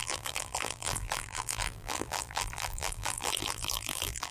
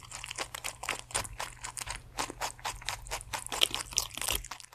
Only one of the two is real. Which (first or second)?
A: second